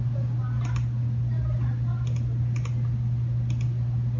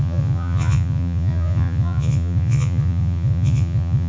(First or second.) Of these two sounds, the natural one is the first